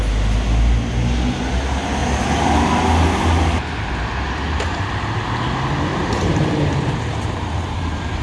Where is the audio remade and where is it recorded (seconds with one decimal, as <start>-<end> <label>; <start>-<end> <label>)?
0.0-5.9 recorded; 5.9-8.2 remade